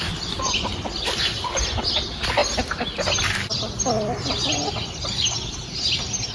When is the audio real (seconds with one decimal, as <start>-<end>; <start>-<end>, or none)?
0.0-6.3